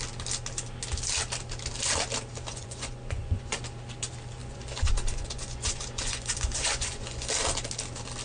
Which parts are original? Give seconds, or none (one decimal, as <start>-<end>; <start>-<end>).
0.0-2.5; 3.6-4.4; 7.3-8.2